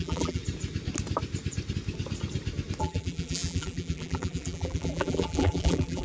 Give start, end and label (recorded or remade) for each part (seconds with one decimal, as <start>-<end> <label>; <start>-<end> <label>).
0.0-0.4 remade; 0.4-2.8 recorded; 2.8-6.0 remade